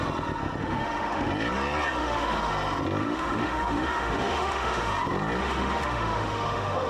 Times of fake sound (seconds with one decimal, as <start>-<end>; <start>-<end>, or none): 0.6-1.3; 2.0-2.5; 3.0-4.9; 5.4-6.9